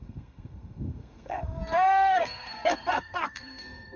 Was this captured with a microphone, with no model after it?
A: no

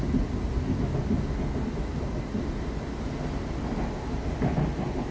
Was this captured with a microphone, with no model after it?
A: yes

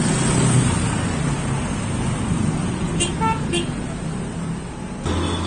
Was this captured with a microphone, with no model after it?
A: yes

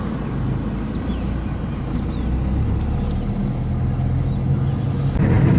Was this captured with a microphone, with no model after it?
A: yes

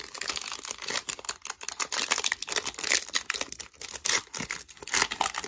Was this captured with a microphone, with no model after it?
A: yes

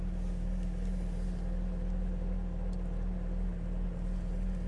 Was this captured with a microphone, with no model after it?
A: yes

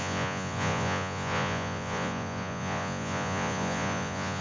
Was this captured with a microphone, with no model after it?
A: no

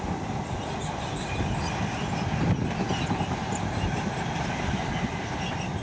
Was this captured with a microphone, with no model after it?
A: yes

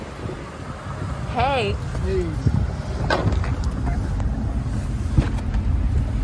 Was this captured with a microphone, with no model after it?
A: yes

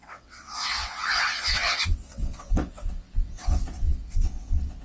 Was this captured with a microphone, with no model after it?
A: no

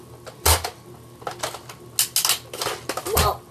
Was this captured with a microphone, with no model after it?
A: yes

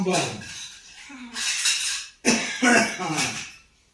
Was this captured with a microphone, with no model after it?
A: no